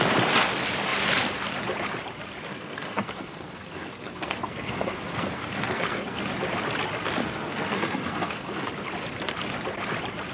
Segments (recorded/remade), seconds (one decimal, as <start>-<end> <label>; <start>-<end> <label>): 0.0-2.5 recorded; 2.5-6.2 remade; 6.2-7.2 recorded; 7.2-8.7 remade; 8.7-10.3 recorded